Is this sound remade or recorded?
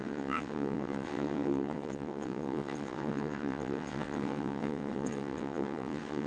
remade